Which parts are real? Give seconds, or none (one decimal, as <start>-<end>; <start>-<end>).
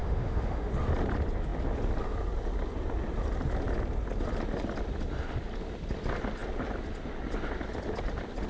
0.7-8.5